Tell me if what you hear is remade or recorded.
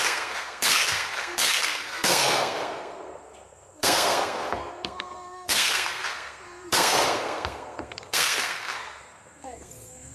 remade